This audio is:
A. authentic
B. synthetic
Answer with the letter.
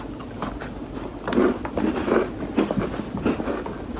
A